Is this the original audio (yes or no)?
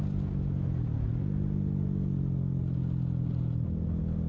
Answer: yes